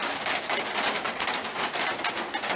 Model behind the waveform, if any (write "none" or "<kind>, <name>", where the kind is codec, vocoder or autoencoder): none